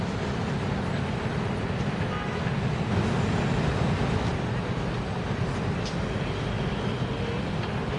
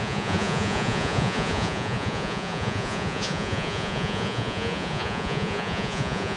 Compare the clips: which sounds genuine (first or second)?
first